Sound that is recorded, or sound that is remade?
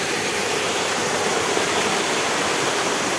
remade